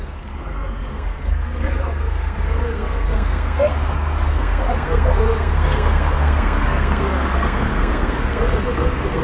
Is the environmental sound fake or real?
fake